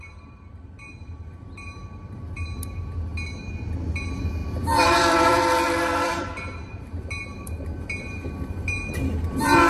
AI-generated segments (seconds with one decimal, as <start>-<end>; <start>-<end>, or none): 0.0-3.1; 3.9-9.7